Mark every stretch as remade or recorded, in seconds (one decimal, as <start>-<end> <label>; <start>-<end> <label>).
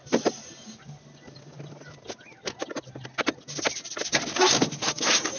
0.0-5.4 recorded